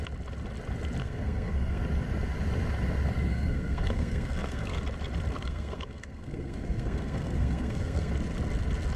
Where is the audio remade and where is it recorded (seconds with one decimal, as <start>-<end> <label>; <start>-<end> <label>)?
0.0-1.0 recorded; 1.0-1.8 remade; 1.8-3.3 recorded; 3.3-4.8 remade; 4.8-5.3 recorded; 5.3-8.1 remade; 8.1-9.0 recorded